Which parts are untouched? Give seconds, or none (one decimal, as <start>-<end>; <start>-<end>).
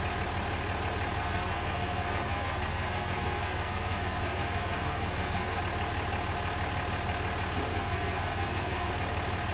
0.0-1.2; 5.6-7.7; 8.9-9.5